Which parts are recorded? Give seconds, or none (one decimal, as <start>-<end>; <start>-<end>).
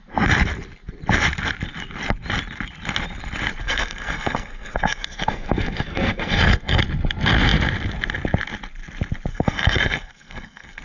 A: 0.0-3.6; 6.8-9.3